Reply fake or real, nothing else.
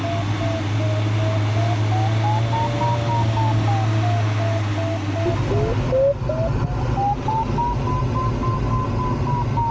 real